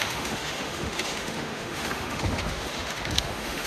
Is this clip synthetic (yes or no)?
yes